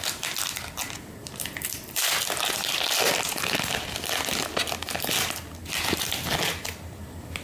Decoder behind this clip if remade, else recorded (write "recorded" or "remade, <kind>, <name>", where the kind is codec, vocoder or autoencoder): recorded